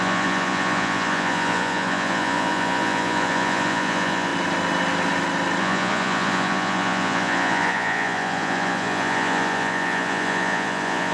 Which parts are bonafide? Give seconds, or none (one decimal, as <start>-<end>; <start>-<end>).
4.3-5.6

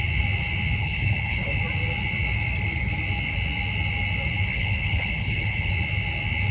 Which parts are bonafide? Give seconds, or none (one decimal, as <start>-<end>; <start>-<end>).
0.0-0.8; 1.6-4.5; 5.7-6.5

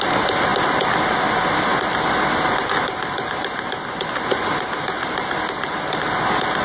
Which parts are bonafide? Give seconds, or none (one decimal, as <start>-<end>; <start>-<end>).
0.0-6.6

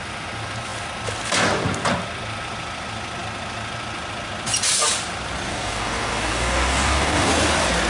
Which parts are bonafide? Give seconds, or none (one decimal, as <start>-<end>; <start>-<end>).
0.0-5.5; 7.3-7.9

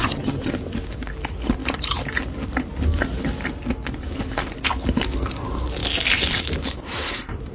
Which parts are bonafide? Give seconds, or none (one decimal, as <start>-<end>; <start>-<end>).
0.5-7.5

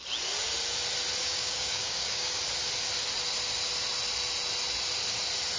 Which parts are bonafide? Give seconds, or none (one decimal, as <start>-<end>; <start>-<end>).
0.0-1.2; 2.4-5.6

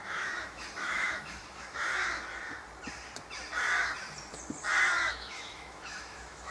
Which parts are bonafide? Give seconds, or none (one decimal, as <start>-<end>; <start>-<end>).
1.9-5.1

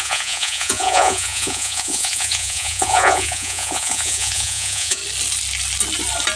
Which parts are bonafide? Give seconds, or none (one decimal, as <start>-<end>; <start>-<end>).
5.0-6.4